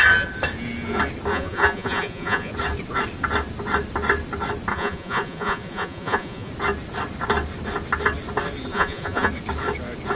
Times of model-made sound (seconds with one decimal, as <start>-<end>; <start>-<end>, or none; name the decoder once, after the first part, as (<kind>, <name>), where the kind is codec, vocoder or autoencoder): 1.3-2.5 (vocoder, Vocos); 4.7-6.5; 8.7-9.3